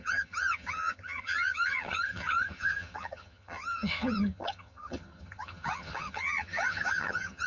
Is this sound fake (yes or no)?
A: yes